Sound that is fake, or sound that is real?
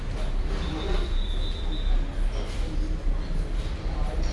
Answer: real